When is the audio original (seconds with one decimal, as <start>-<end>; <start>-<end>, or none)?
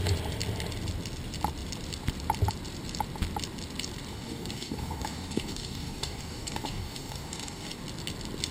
0.0-4.1; 7.8-8.5